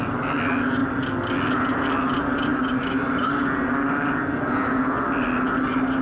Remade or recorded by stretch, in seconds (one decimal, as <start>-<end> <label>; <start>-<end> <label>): 0.0-6.0 recorded